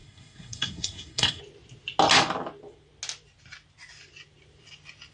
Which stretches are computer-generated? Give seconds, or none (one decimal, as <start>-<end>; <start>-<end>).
0.0-1.4